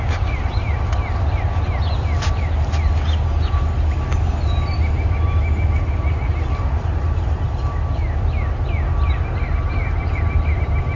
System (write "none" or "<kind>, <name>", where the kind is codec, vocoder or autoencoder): none